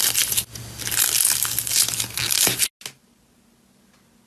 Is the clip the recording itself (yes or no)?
yes